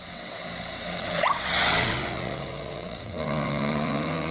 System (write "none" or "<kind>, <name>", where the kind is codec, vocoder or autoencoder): vocoder, WaveNeXt